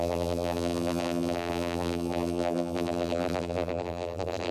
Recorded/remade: remade